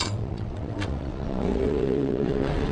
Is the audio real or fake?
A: fake